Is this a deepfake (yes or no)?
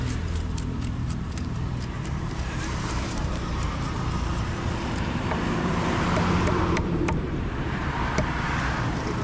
yes